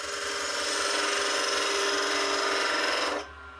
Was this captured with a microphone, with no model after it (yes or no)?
yes